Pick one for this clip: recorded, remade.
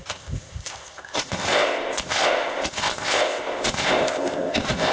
remade